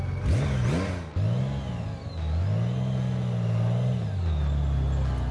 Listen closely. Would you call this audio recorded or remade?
recorded